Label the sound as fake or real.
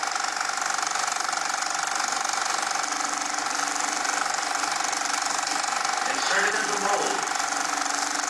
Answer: real